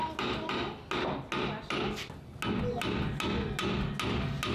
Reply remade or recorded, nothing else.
recorded